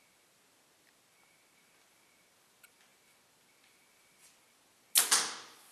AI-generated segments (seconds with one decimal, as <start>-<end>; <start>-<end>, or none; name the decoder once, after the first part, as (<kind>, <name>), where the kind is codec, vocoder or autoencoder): none